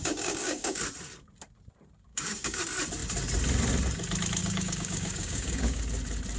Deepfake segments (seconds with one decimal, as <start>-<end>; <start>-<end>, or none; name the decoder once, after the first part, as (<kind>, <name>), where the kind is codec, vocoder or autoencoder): 0.0-0.8 (codec, DAC); 2.1-2.6; 4.4-5.8